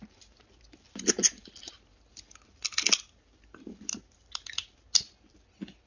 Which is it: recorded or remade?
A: recorded